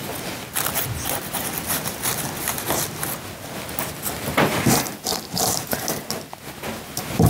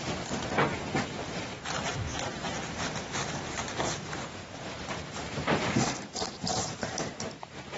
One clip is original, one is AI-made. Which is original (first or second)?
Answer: first